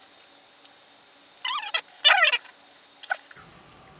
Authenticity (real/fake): real